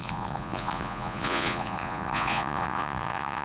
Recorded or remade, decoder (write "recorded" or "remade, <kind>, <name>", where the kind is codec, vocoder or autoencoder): remade, vocoder, Vocos